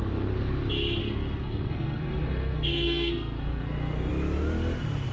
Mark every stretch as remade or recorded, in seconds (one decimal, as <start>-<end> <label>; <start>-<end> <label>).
0.0-1.0 recorded; 1.0-4.1 remade; 4.1-5.1 recorded